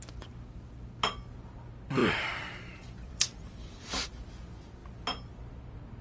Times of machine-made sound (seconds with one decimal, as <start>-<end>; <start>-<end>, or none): 2.0-3.6